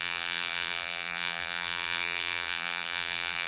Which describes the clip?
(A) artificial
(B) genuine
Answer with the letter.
A